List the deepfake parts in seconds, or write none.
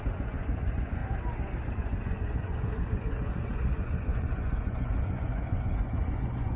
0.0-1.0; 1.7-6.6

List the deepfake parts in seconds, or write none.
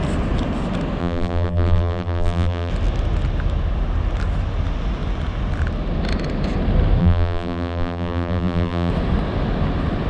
1.0-2.7; 7.0-8.9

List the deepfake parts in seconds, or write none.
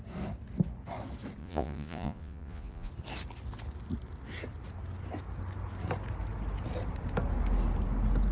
1.4-2.9